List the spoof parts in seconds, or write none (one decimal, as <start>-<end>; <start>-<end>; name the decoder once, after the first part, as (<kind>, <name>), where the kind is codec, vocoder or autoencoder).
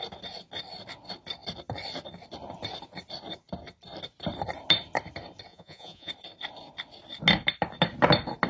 5.5-6.1 (vocoder, Vocos)